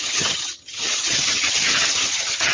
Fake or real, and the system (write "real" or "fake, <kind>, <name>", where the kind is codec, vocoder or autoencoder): fake, vocoder, HiFi-GAN